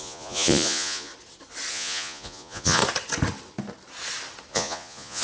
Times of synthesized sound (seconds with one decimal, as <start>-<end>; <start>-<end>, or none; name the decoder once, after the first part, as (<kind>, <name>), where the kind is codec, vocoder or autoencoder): 0.0-1.1 (vocoder, Vocos); 1.7-2.8; 4.5-5.2